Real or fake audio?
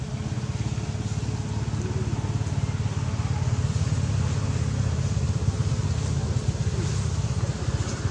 real